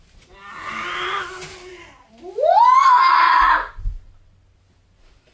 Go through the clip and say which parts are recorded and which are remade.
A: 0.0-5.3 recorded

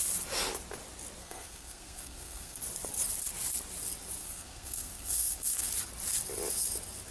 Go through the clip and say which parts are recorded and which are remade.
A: 0.0-1.2 recorded; 1.2-2.6 remade; 2.6-4.2 recorded; 4.2-5.7 remade; 5.7-7.1 recorded